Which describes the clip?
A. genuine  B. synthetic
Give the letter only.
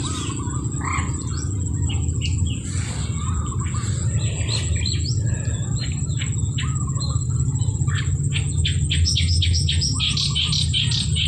A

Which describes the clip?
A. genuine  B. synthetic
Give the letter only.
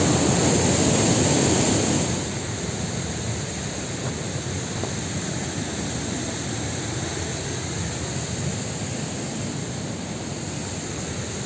A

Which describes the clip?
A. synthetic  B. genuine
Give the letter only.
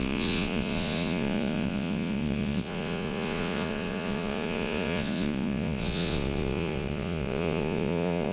A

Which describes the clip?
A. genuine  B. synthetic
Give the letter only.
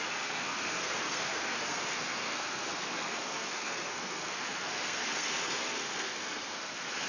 B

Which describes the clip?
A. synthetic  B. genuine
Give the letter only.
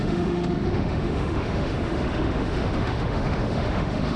A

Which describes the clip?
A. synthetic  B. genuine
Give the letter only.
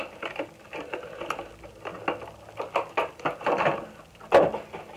B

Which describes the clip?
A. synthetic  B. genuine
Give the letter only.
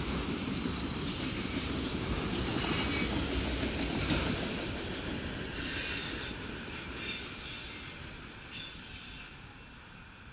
B